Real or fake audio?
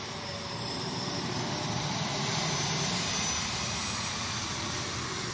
real